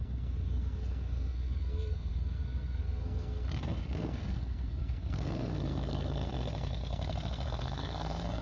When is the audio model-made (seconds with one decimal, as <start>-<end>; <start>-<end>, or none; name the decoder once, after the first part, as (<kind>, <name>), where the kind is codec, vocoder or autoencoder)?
0.0-8.4 (codec, SNAC)